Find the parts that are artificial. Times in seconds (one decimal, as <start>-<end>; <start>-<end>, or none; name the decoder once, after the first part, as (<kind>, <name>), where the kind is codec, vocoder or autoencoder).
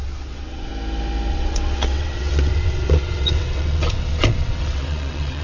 0.0-0.7 (vocoder, WaveNeXt); 1.3-5.4